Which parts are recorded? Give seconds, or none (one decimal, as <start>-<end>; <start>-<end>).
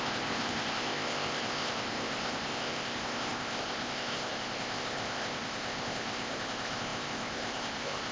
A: none